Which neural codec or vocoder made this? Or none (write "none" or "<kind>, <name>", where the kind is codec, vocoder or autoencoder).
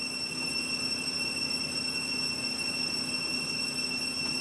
none